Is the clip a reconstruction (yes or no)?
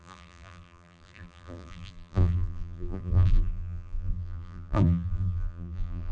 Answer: yes